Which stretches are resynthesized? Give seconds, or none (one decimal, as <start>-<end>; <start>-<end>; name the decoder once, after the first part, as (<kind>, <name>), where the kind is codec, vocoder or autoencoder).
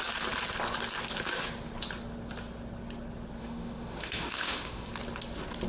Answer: 3.4-4.9 (autoencoder, DAC-VAE)